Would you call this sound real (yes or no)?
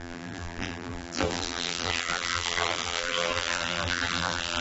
no